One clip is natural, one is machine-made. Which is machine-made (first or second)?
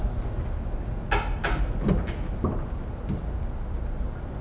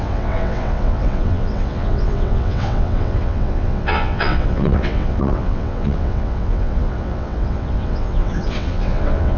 second